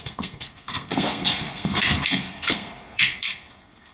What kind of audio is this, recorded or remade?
remade